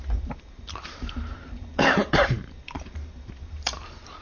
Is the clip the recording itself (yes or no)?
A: no